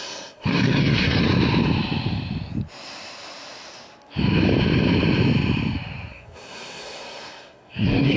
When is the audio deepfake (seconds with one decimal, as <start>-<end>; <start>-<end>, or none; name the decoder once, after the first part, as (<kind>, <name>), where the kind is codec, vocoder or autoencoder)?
0.0-1.2 (codec, SNAC); 6.1-8.2